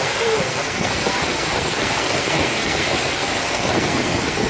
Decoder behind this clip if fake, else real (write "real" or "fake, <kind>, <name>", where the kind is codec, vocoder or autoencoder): fake, codec, SNAC